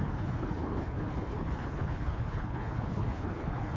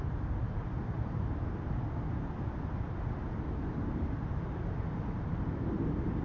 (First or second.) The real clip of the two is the second